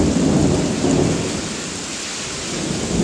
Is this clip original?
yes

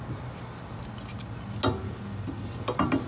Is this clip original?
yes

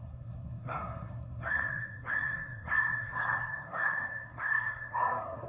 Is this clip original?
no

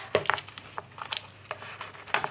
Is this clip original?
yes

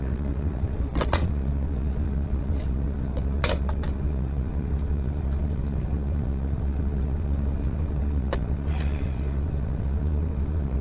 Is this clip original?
no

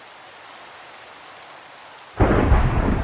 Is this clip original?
yes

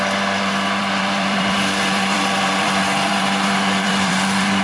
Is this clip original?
no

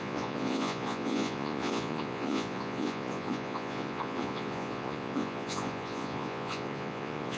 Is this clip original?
no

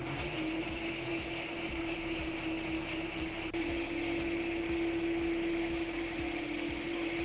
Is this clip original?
yes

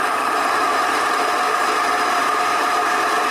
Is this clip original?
yes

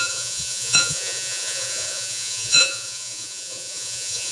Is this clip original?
no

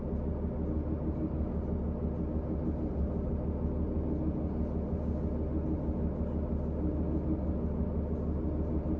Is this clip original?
yes